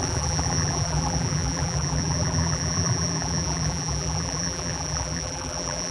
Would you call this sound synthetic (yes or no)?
yes